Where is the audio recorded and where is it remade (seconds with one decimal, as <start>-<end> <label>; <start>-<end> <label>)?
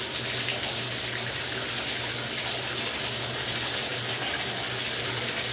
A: 0.0-5.5 recorded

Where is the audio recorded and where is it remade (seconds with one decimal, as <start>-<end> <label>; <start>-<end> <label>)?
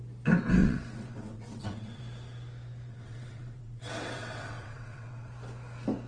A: 0.0-0.6 recorded; 0.6-2.0 remade; 2.0-2.9 recorded; 2.9-5.3 remade; 5.3-6.1 recorded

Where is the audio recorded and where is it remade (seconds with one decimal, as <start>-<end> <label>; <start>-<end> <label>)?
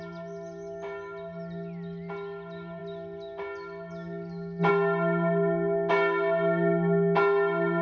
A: 0.0-7.8 recorded